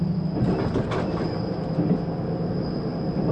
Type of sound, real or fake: real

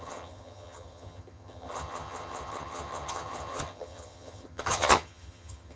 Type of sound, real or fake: fake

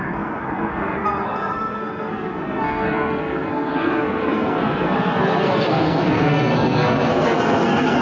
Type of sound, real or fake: fake